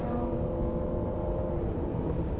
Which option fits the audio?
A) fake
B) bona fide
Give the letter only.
A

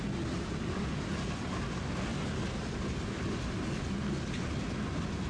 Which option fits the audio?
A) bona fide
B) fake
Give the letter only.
A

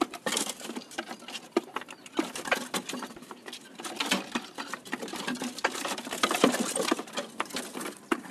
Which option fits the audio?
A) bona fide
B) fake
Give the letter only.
A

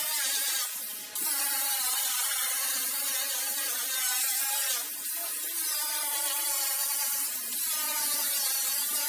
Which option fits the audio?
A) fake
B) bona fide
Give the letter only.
A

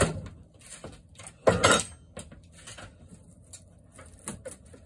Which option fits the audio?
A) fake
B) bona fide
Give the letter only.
B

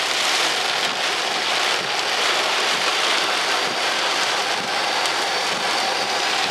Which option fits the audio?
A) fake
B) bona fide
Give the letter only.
A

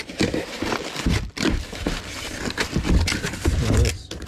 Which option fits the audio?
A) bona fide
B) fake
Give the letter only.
B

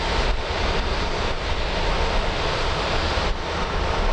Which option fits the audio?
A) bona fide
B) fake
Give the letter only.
A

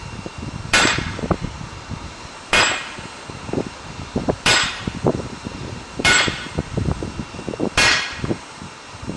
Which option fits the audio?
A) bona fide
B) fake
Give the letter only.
B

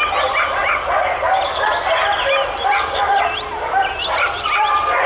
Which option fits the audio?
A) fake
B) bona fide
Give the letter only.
B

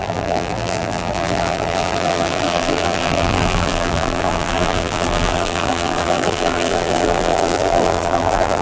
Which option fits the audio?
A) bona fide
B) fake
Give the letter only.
B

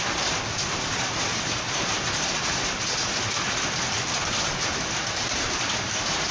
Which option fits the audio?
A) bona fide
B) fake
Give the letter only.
B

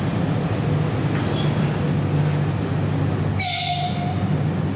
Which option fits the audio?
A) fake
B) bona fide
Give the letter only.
B